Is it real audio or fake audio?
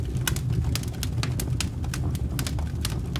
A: real